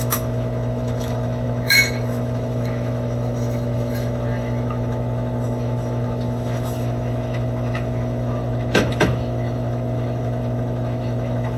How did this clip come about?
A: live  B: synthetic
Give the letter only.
B